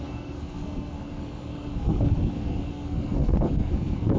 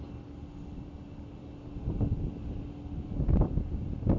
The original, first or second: second